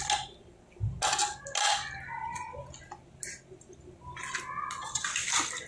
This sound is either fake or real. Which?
real